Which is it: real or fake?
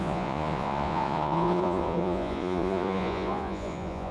fake